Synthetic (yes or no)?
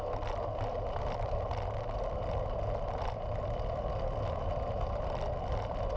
no